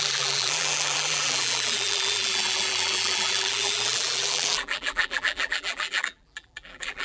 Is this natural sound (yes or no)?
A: no